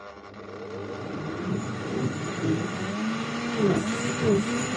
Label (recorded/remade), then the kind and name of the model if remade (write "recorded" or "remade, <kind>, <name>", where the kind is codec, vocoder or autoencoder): recorded